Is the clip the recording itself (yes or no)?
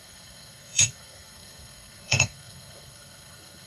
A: no